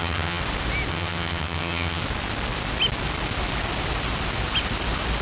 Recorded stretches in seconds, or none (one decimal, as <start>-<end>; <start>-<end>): 0.4-0.9; 2.0-5.2